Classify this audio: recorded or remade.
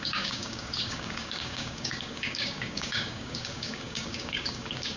remade